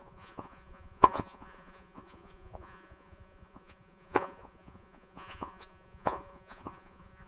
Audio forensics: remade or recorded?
remade